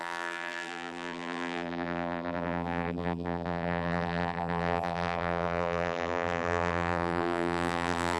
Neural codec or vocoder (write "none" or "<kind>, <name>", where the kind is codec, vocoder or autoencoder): vocoder, BigVGAN v2